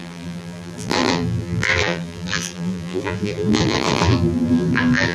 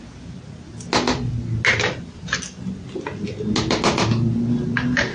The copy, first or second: first